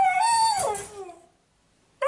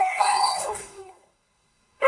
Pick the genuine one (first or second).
first